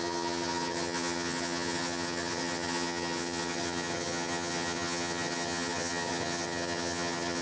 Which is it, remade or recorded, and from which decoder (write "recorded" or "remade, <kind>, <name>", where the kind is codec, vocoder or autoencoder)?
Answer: remade, vocoder, HiFi-GAN